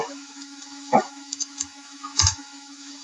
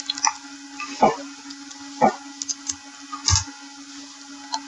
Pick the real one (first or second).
second